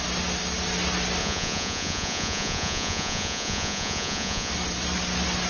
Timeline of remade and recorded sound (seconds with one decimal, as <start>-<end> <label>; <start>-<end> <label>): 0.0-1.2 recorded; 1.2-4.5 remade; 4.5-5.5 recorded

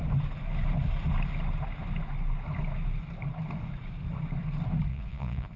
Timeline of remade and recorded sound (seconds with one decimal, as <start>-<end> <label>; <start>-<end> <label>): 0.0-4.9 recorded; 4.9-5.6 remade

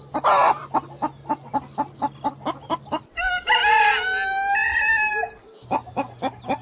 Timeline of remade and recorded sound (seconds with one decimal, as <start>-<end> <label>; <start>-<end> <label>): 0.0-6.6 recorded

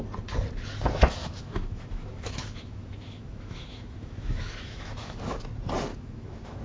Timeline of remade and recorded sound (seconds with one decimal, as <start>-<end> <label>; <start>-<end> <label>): 0.0-1.2 recorded; 1.2-5.2 remade; 5.2-5.9 recorded; 5.9-6.6 remade

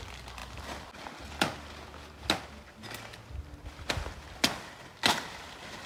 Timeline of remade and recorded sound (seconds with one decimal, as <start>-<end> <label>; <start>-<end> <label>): 0.0-5.9 recorded

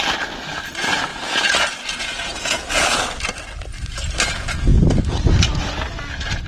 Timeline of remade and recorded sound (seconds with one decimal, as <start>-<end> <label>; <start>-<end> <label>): 0.0-1.1 recorded; 1.1-3.1 remade; 3.1-6.5 recorded

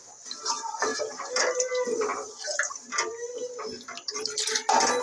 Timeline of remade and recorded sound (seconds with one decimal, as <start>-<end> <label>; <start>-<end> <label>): 0.0-5.0 recorded